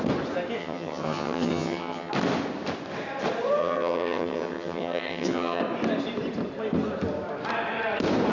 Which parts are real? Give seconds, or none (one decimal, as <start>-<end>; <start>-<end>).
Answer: 0.0-0.6; 2.1-3.6; 5.6-8.3